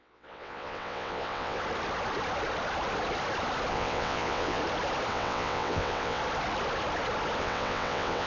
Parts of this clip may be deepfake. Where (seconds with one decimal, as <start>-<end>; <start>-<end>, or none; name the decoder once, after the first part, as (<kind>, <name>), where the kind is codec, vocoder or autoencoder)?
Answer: 0.0-1.6 (vocoder, WaveNeXt); 3.7-4.6; 5.1-6.2; 7.4-8.3